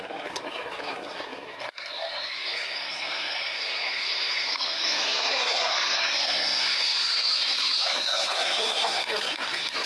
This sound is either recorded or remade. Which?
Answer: remade